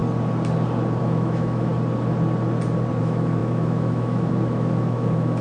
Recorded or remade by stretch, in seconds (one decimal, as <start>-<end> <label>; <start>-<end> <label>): 0.0-1.0 recorded; 1.0-1.7 remade; 1.7-3.0 recorded; 3.0-5.4 remade

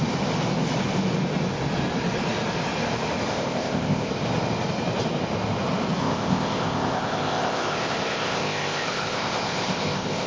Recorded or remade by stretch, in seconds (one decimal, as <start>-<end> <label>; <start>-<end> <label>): 0.0-3.3 recorded; 3.3-4.1 remade; 4.1-6.0 recorded; 6.0-10.3 remade

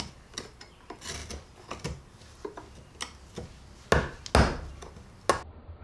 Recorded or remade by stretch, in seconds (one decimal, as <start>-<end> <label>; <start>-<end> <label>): 0.0-5.8 recorded

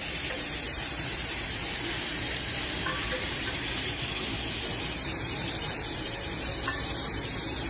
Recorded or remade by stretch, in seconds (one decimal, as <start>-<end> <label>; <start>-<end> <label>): 0.0-7.7 remade

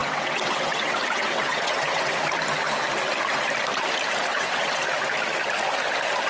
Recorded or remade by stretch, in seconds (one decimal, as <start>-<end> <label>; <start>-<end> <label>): 0.0-2.1 remade; 2.1-4.3 recorded; 4.3-4.8 remade; 4.8-6.3 recorded

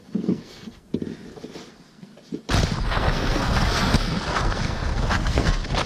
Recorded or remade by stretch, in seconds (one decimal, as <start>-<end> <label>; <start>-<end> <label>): 0.0-0.9 remade; 0.9-1.7 recorded; 1.7-2.1 remade; 2.1-2.8 recorded; 2.8-5.9 remade

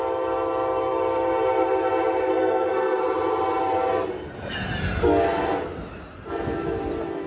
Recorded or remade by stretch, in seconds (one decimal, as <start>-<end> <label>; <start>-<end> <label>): 0.0-2.3 recorded; 2.3-3.0 remade; 3.0-7.3 recorded